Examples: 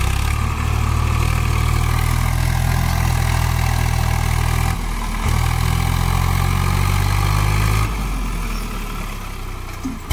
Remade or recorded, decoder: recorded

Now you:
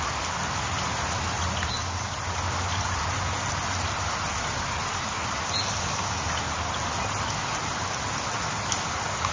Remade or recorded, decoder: recorded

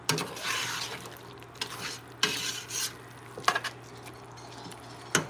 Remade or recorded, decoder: recorded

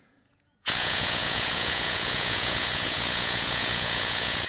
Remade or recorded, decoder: remade, vocoder, Vocos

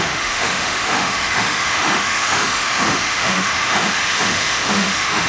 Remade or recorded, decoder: remade, autoencoder, DAC-VAE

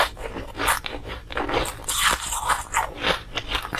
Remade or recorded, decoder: recorded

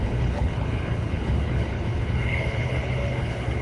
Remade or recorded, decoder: remade, codec, HILCodec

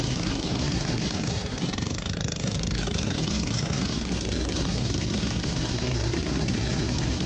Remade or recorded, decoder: remade, codec, SNAC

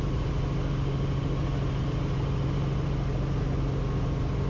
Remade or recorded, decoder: recorded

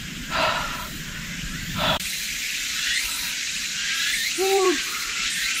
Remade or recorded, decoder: remade, vocoder, BigVGAN v2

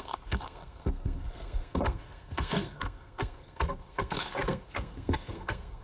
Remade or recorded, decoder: remade, codec, SNAC